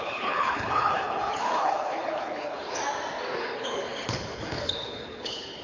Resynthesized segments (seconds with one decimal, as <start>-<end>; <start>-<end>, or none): 0.0-2.8; 3.4-5.6